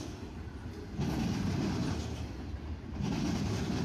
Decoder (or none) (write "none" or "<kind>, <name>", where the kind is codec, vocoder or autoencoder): none